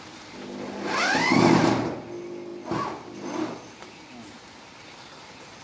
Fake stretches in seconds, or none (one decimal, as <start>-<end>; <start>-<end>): none